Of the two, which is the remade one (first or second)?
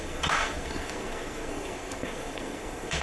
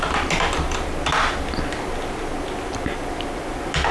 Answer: first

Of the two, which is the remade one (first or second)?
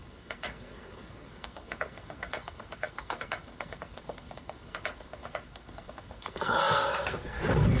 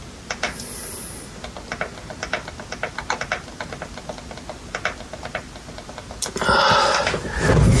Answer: first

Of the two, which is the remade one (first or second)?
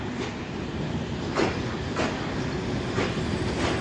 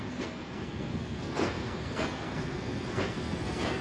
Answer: second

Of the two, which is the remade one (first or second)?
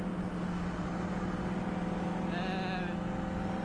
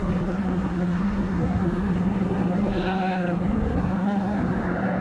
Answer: second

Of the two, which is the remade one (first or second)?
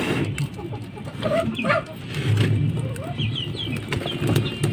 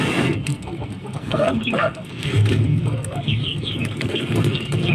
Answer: second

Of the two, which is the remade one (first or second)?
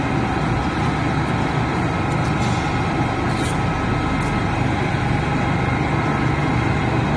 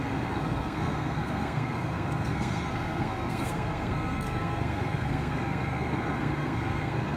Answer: second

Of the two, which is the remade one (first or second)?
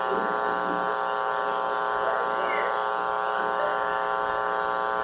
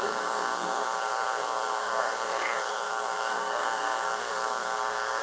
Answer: second